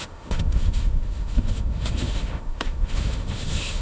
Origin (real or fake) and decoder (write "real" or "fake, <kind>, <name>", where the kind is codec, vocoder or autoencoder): fake, autoencoder, DAC-VAE